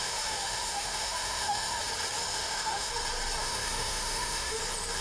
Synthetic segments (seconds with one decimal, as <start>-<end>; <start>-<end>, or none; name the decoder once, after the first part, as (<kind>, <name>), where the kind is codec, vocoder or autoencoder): 0.0-1.8 (autoencoder, DAC-VAE); 2.2-2.9; 3.4-4.6